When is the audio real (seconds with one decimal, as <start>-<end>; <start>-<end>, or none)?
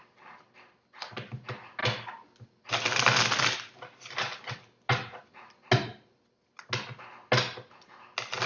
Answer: 0.0-8.5